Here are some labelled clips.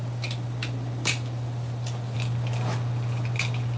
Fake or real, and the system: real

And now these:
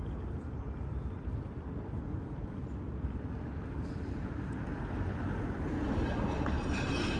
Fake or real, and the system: real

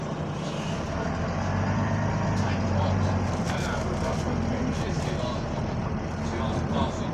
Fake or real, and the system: real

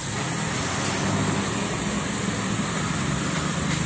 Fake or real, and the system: real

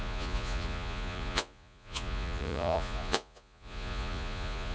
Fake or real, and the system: fake, vocoder, Vocos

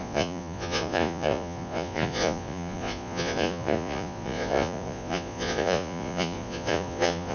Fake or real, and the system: fake, vocoder, Vocos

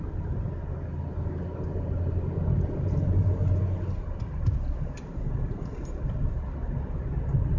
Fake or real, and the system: real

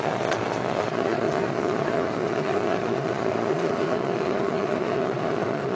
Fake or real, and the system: fake, vocoder, Vocos